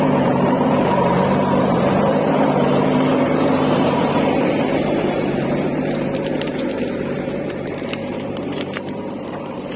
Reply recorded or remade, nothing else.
remade